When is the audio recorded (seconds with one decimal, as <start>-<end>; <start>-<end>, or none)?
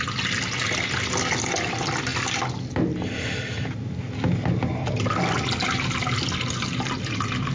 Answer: 0.0-7.5